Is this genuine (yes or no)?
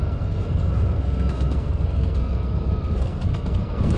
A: no